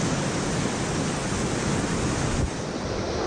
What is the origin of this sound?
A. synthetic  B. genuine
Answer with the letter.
B